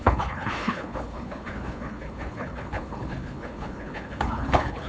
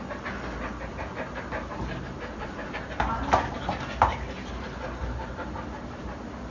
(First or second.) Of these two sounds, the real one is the second